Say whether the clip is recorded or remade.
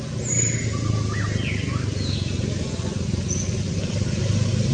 recorded